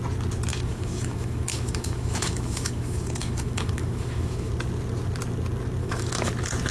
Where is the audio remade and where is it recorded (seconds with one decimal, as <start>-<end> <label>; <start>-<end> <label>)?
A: 0.0-0.5 recorded; 0.5-4.5 remade; 4.5-5.8 recorded; 5.8-6.3 remade; 6.3-6.7 recorded